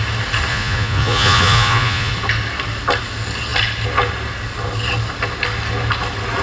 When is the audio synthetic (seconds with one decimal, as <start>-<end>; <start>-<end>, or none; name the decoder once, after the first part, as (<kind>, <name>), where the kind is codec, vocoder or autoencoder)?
0.5-2.1 (vocoder, Vocos)